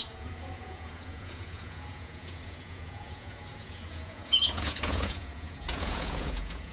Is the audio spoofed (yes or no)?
yes